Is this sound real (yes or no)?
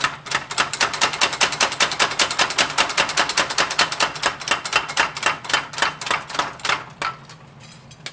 yes